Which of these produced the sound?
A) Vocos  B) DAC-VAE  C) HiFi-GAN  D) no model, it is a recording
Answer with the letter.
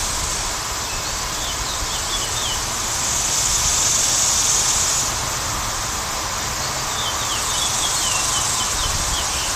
D